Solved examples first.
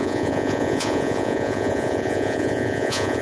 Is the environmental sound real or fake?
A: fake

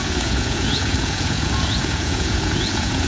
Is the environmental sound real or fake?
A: fake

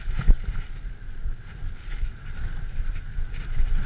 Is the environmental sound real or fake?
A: real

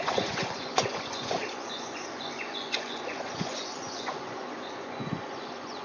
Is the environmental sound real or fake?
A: fake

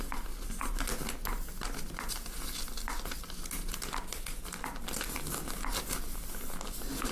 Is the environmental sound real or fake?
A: real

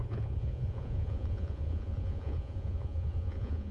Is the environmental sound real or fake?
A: fake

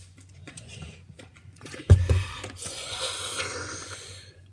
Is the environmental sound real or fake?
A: fake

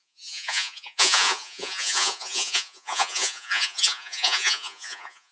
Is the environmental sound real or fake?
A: fake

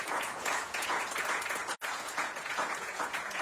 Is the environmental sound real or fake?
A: fake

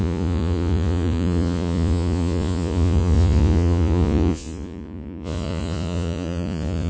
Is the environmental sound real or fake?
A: fake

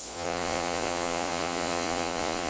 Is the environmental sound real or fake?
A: fake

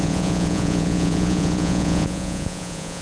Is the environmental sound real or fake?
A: fake